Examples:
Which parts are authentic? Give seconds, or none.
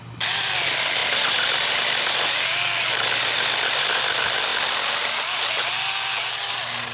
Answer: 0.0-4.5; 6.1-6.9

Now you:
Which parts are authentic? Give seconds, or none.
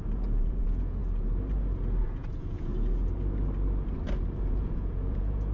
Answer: 1.0-2.0; 2.7-4.5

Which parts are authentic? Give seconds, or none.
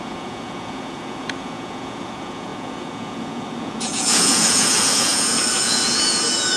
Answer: none